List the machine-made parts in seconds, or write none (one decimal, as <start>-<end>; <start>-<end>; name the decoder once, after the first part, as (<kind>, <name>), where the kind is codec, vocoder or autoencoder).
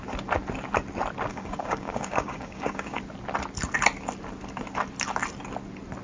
1.3-3.0 (codec, DAC)